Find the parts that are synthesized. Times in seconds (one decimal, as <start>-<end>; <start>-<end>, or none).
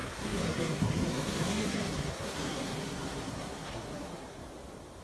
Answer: 0.0-4.4